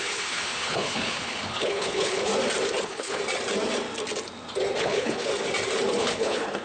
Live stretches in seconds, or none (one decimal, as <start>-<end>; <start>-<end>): 2.3-2.8; 3.2-4.8; 5.3-6.0